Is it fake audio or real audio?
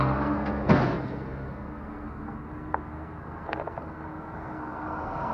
fake